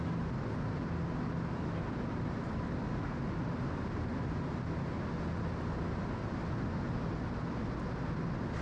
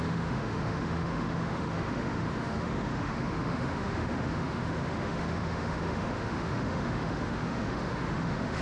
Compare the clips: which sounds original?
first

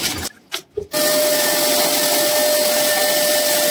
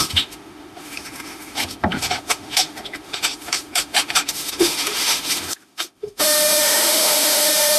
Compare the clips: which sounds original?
first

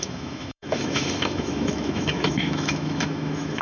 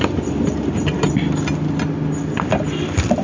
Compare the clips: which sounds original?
second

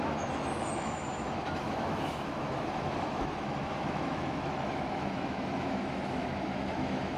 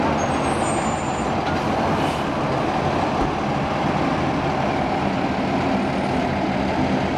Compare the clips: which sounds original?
second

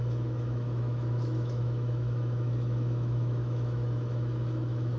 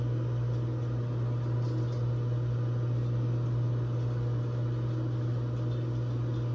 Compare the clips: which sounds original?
second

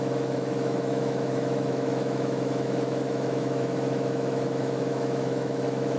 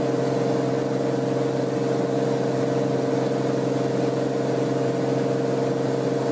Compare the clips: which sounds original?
second